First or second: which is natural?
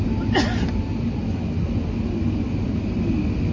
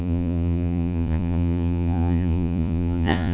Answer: first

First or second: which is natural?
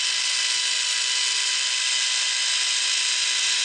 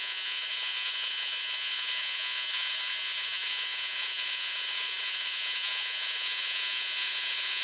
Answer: first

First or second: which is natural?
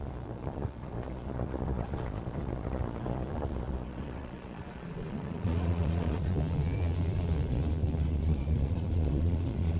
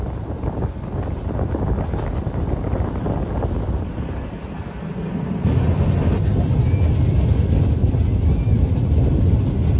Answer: second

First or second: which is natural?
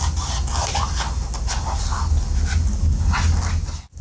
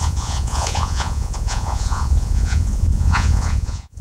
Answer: first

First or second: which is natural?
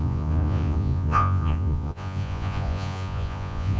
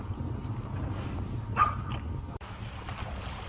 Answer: second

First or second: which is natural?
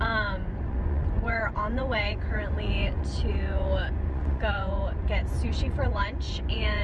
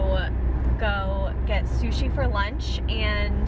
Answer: second